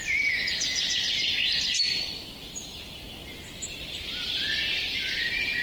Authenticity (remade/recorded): recorded